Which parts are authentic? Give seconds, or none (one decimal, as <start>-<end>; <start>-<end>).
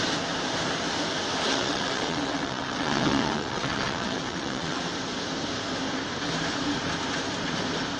0.0-1.5; 4.8-8.0